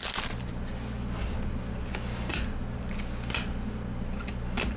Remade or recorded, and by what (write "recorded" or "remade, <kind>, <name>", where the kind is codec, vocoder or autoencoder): recorded